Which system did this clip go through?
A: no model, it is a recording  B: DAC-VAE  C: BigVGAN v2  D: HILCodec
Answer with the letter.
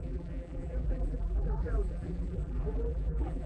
C